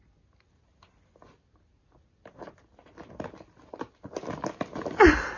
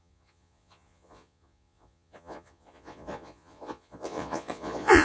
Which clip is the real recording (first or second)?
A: first